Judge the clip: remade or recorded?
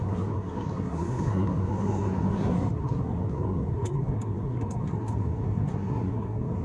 remade